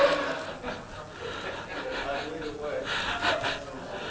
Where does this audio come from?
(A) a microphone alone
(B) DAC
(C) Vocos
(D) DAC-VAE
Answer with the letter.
A